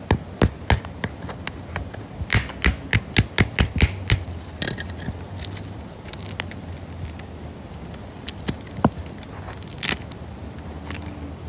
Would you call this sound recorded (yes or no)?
yes